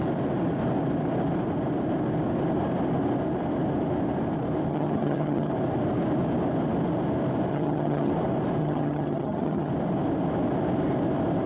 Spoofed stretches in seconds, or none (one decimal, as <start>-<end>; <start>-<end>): 4.7-5.5; 7.5-8.1; 8.6-9.7